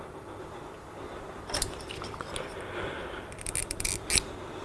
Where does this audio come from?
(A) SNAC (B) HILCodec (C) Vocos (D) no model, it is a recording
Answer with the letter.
D